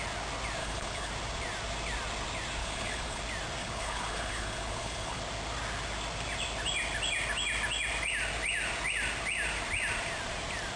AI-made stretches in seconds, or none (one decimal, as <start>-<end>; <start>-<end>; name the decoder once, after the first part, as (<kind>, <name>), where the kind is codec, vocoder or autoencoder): 0.6-1.1 (codec, HILCodec); 2.6-3.2; 3.6-5.2